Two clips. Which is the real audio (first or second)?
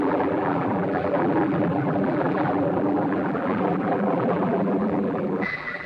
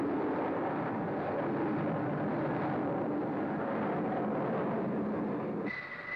second